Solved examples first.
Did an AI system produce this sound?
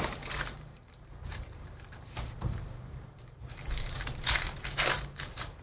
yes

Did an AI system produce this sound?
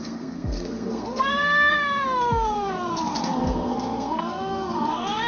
yes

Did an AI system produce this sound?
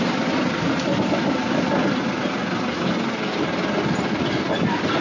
no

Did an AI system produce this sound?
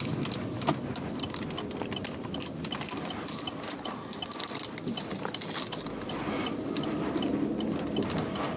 no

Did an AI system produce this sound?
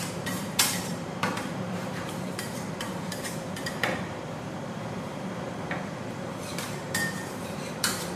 yes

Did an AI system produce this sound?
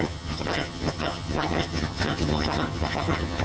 yes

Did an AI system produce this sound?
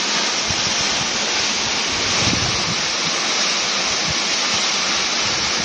no